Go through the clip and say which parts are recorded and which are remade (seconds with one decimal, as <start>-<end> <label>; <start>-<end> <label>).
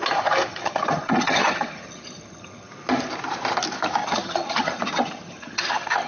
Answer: 0.0-0.5 recorded; 0.5-2.7 remade; 2.7-4.0 recorded; 4.0-6.1 remade